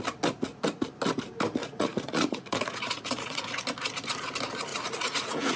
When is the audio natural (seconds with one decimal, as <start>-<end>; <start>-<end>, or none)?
0.0-1.6; 3.4-4.7